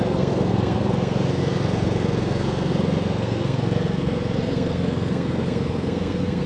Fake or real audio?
fake